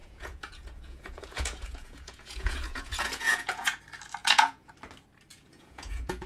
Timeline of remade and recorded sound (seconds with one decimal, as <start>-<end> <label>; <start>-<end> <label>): 0.0-3.8 remade; 3.8-4.2 recorded; 4.2-4.7 remade; 4.7-5.3 recorded; 5.3-6.3 remade